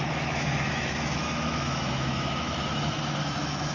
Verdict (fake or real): fake